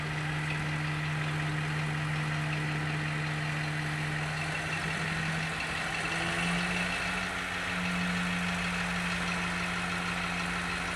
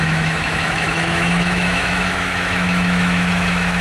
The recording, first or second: first